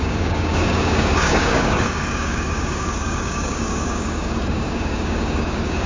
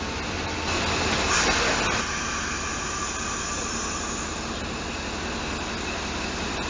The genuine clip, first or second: second